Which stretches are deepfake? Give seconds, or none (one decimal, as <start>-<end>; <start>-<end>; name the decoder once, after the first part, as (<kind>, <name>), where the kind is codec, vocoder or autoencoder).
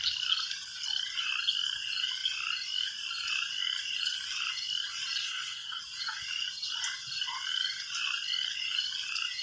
5.2-5.8 (codec, SNAC)